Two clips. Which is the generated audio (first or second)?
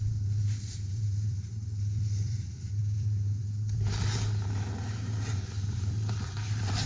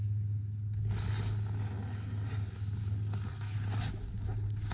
first